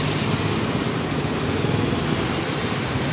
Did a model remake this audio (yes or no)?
no